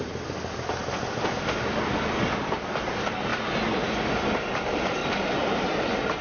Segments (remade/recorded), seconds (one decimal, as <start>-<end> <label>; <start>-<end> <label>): 0.0-6.2 recorded